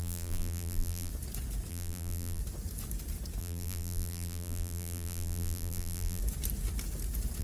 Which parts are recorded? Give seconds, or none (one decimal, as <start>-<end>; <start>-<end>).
1.1-1.7; 2.4-3.4; 6.2-7.4